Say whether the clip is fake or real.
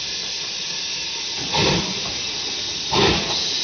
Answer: real